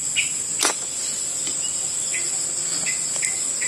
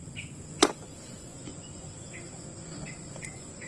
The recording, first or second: first